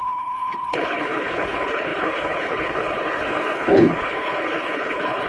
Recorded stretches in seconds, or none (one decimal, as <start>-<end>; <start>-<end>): none